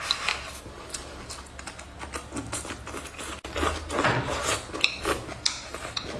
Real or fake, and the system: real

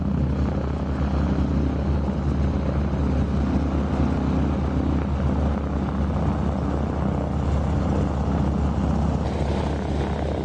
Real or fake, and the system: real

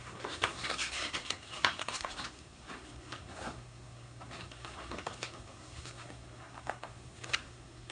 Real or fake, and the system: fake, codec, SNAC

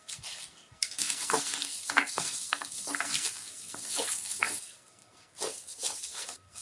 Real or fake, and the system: fake, codec, SNAC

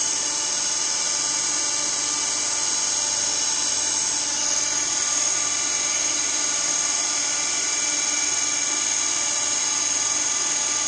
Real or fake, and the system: real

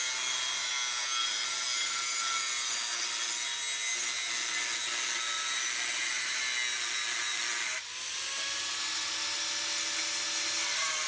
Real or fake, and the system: real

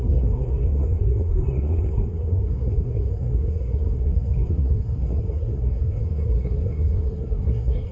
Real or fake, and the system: fake, codec, SNAC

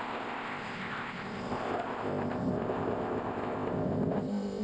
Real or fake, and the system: fake, codec, ZipCodec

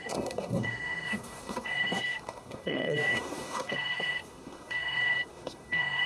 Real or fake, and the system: fake, codec, SNAC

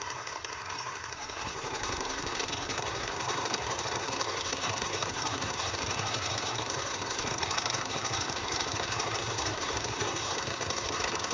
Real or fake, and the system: fake, codec, SNAC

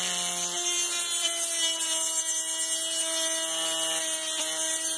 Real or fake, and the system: real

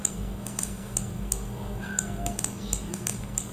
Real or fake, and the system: fake, codec, SNAC